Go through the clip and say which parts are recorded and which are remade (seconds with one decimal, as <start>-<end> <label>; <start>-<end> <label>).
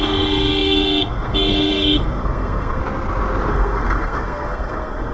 0.0-2.8 remade; 2.8-3.5 recorded; 3.5-5.1 remade